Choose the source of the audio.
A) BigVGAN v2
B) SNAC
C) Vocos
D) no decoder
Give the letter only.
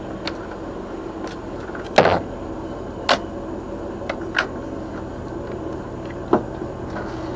D